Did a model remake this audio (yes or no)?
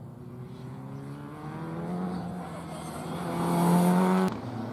no